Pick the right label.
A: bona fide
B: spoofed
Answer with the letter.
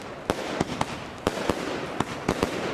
A